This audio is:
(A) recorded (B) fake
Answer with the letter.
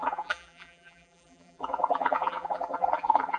B